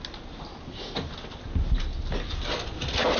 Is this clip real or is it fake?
real